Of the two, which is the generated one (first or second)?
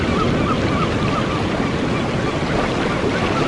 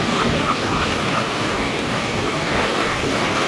second